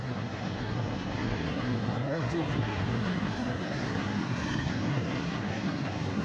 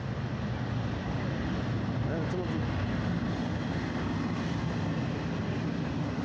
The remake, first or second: first